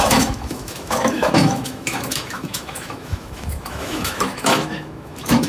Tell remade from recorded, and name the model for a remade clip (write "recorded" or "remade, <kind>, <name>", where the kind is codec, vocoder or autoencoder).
remade, autoencoder, DAC-VAE